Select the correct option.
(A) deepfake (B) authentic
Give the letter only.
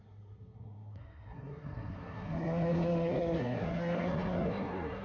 A